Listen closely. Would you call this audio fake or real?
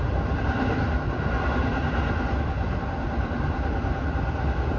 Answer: real